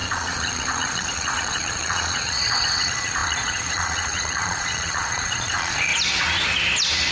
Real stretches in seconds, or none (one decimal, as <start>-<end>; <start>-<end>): 5.9-7.1